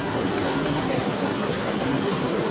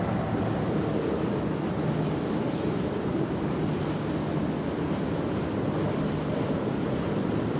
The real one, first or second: second